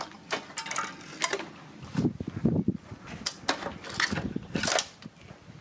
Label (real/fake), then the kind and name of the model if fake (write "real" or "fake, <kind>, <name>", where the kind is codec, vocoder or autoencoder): real